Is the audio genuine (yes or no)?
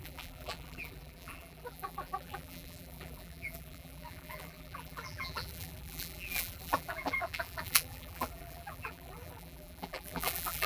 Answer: no